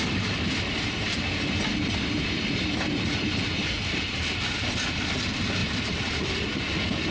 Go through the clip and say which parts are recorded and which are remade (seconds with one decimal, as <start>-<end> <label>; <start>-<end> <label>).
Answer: 0.0-1.7 recorded; 1.7-5.0 remade; 5.0-5.6 recorded; 5.6-6.1 remade; 6.1-7.1 recorded